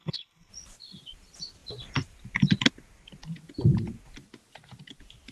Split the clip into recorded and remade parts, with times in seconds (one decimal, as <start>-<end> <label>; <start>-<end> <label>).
0.0-0.5 remade; 0.5-5.3 recorded